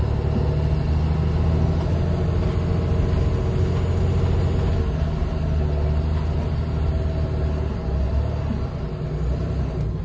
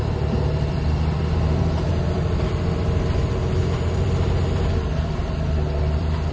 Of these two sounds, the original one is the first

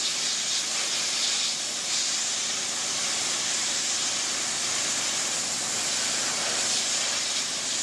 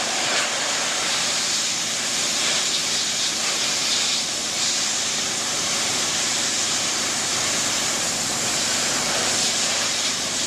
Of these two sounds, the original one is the first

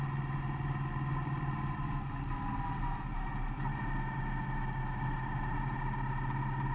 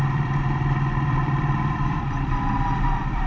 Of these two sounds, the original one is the first